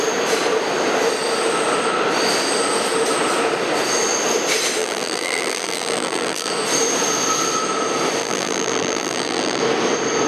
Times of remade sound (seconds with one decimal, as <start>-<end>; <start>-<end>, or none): 4.8-6.5; 8.2-9.6